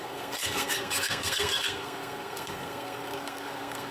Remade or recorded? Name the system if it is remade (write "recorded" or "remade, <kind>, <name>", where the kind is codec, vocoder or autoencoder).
remade, codec, SNAC